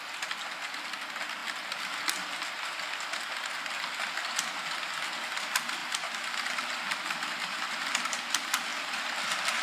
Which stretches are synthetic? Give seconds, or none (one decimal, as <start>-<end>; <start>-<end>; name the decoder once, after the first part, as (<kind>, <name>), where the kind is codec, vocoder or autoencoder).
5.8-8.2 (vocoder, BigVGAN v2); 8.7-9.6